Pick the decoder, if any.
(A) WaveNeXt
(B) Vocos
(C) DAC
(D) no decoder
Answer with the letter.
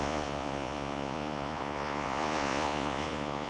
B